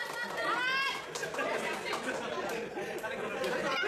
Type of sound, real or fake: real